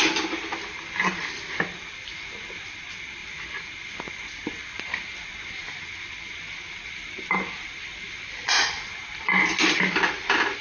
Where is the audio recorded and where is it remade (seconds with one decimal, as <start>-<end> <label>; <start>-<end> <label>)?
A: 0.0-10.6 recorded